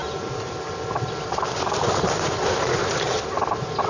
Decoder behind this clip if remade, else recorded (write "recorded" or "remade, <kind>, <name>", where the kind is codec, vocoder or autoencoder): recorded